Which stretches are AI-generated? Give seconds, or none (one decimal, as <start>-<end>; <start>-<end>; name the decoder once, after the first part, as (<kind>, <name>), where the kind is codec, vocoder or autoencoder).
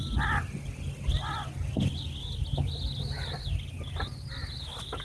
none